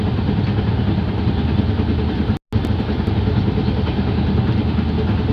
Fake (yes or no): no